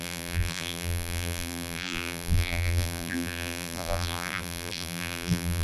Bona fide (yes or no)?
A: no